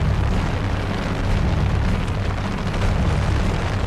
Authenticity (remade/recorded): recorded